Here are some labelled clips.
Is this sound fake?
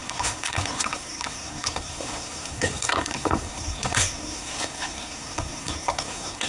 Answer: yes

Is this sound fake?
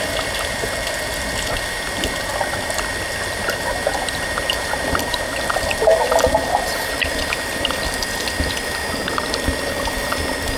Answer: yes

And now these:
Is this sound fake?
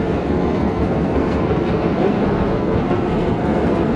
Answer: yes